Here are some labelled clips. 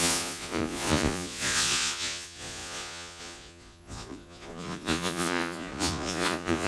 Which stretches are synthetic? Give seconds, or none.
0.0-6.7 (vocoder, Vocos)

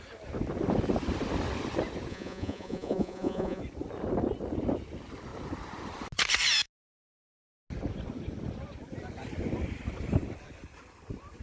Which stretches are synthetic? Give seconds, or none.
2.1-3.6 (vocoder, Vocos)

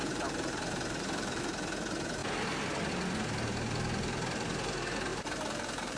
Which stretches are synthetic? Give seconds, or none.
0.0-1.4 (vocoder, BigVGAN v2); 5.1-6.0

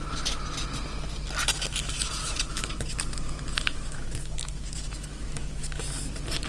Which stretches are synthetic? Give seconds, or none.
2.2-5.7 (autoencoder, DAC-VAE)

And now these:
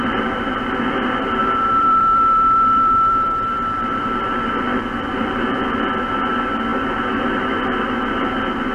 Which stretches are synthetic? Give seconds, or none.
1.4-5.6 (vocoder, BigVGAN v2)